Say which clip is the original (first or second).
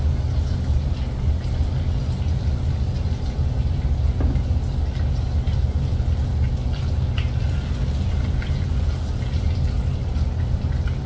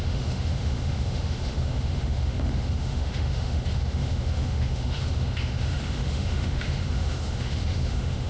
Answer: first